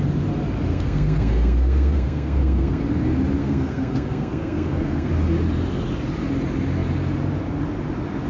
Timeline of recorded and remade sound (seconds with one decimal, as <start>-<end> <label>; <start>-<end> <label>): 0.0-0.7 recorded; 0.7-2.8 remade; 2.8-3.4 recorded; 3.4-5.1 remade; 5.1-8.3 recorded